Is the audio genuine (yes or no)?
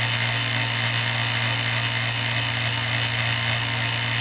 yes